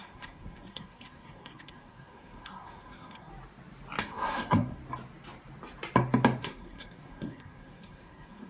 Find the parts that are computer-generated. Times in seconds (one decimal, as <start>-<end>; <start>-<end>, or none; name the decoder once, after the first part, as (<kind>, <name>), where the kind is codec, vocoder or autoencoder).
0.0-3.3 (codec, SNAC); 4.0-4.8; 6.4-8.5